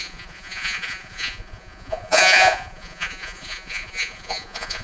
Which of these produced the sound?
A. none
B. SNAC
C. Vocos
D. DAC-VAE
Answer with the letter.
C